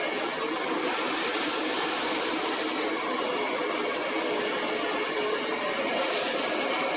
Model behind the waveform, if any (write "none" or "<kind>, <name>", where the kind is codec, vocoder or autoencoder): none